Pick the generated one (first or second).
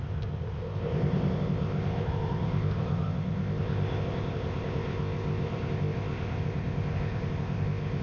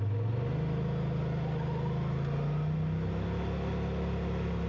first